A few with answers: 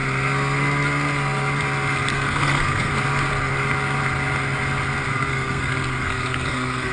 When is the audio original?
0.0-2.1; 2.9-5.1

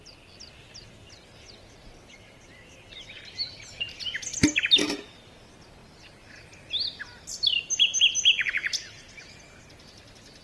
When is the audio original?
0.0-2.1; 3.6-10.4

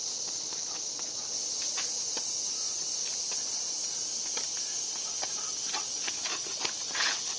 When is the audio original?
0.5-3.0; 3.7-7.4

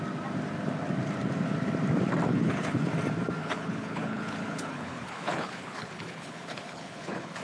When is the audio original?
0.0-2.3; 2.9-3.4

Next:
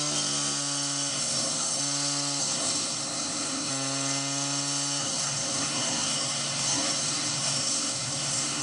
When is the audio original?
0.0-1.1; 1.8-2.4; 3.7-5.0

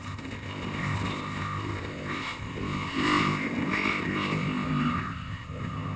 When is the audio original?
none

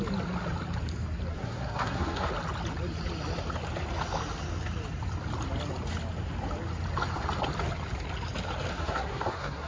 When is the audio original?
0.0-1.3; 2.3-8.7

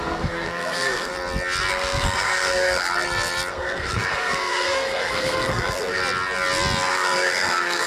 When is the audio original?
1.1-1.7; 2.9-3.5; 6.0-6.9